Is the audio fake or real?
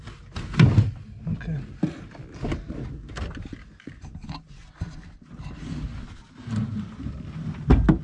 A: real